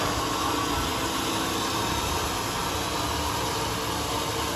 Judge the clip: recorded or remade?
recorded